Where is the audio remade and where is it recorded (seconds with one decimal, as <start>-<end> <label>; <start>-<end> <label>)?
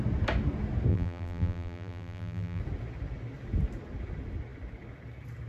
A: 0.0-0.9 recorded; 0.9-2.6 remade; 2.6-5.5 recorded